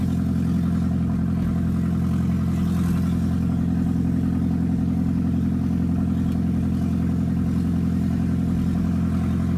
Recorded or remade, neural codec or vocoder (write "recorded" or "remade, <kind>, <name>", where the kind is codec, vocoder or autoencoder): recorded